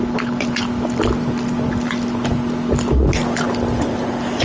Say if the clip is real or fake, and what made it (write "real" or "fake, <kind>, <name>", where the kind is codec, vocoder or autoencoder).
real